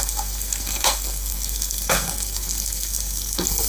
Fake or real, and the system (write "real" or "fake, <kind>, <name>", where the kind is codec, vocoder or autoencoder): fake, codec, SNAC